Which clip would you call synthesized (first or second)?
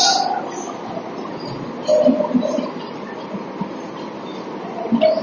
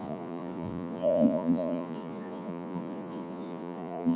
second